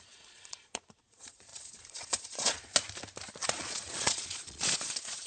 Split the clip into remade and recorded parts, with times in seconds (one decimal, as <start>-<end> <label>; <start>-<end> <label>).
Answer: 0.0-2.7 remade; 2.7-3.5 recorded; 3.5-5.3 remade